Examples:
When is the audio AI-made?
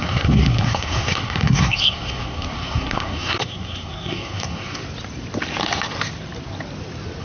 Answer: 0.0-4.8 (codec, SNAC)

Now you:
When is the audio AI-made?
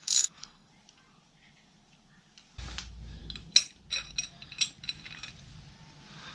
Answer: 0.0-0.7 (codec, SNAC)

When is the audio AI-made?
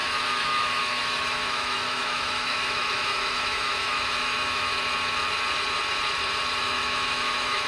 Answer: 0.0-4.7 (autoencoder, DAC-VAE); 6.6-7.7